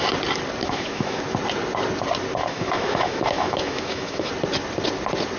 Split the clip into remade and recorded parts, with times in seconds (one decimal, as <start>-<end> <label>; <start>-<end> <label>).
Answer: 0.0-0.6 recorded; 0.6-1.2 remade; 1.2-2.4 recorded; 2.4-4.3 remade; 4.3-5.4 recorded